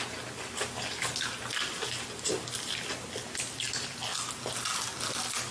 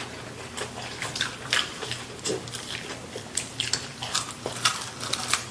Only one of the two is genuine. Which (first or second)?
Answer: first